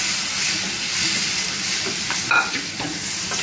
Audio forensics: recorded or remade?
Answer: recorded